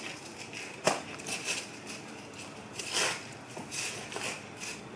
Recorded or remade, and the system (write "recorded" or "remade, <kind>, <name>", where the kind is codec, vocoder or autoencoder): recorded